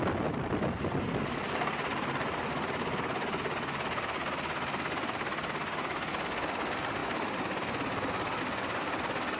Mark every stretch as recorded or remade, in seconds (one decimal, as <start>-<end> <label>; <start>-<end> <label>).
0.0-9.4 recorded